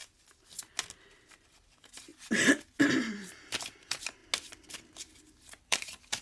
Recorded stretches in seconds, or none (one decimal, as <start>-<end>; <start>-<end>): 0.0-1.0; 2.1-2.9; 4.2-5.6